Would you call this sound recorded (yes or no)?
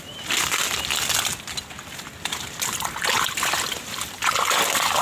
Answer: yes